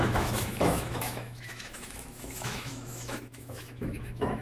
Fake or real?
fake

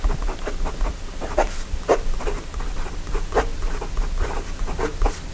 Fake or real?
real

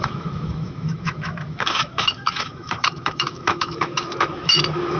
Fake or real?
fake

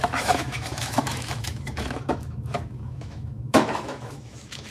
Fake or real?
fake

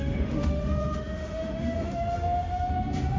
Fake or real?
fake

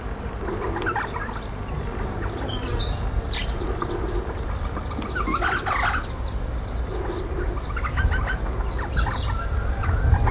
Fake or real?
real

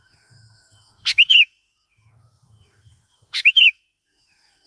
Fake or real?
fake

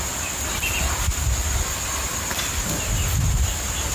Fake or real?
real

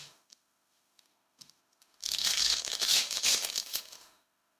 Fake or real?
fake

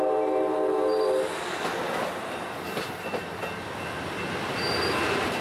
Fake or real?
real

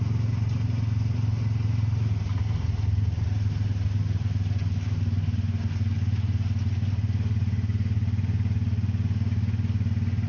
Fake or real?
real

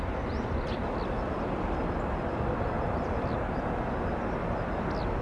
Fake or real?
real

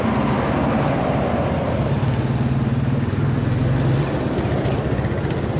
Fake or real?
real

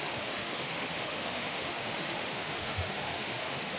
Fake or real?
fake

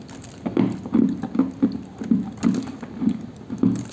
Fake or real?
real